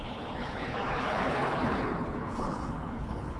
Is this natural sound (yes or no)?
no